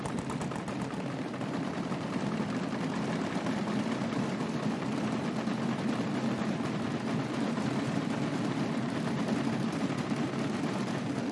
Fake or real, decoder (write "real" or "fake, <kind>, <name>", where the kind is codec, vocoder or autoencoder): fake, vocoder, BigVGAN v2